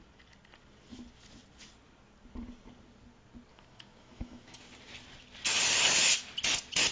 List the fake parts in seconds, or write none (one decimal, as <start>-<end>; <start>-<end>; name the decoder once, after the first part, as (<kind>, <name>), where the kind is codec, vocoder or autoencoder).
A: 3.5-4.6 (autoencoder, DAC-VAE)